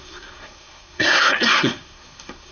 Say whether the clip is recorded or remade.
remade